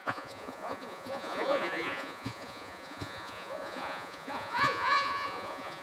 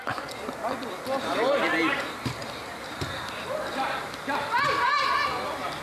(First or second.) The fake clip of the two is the first